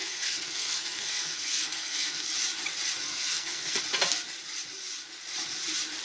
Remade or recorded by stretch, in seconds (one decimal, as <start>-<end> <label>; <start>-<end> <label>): 0.0-2.2 remade; 2.2-3.1 recorded; 3.1-3.8 remade; 3.8-6.0 recorded